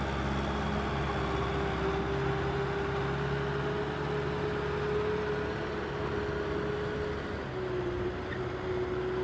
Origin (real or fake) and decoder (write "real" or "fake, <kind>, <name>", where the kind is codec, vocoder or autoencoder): real